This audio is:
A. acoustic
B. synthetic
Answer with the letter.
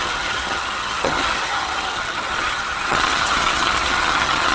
B